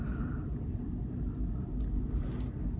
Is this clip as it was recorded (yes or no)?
no